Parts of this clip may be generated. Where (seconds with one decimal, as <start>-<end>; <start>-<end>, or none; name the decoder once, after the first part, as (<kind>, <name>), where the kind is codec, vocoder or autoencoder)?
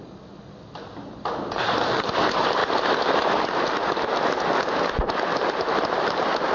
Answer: 5.3-6.5 (vocoder, BigVGAN v2)